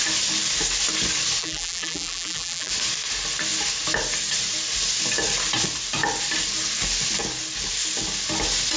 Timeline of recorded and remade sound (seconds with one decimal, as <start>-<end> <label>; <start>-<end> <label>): 0.0-1.4 recorded; 1.4-2.7 remade; 2.7-8.8 recorded